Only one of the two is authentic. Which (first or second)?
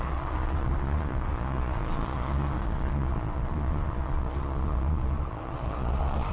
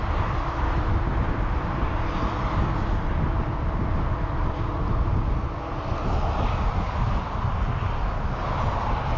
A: second